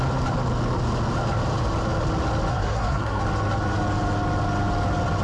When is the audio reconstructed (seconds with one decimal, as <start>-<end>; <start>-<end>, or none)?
2.5-3.2